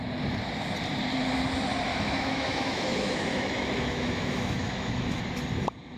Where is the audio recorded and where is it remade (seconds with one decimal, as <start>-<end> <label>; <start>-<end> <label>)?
0.0-1.9 recorded; 1.9-5.2 remade; 5.2-6.0 recorded